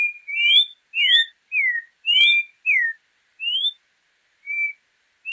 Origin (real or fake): real